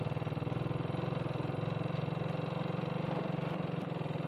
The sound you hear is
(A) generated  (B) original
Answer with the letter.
A